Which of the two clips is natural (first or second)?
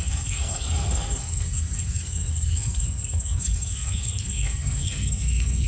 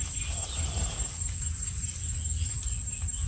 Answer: second